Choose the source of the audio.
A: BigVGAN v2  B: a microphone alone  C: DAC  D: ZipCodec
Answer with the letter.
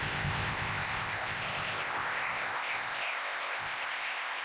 D